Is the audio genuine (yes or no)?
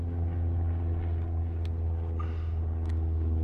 yes